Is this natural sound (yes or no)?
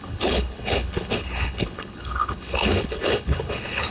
no